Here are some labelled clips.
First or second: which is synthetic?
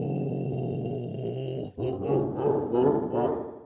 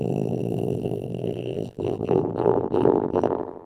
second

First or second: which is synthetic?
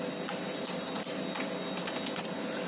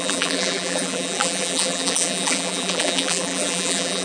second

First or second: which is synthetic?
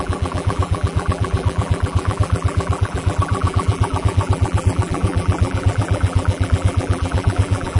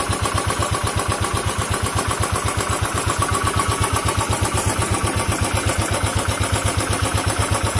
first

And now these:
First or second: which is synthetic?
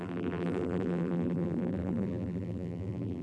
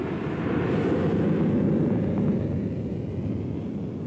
first